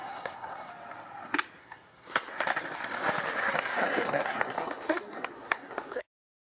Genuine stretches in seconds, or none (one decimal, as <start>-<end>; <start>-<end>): 0.7-1.6; 2.3-3.4; 6.1-6.5